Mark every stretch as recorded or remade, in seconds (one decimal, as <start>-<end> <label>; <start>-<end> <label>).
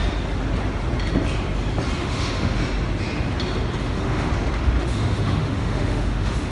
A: 0.0-2.0 recorded; 2.0-2.6 remade; 2.6-3.8 recorded; 3.8-4.3 remade; 4.3-4.8 recorded; 4.8-6.5 remade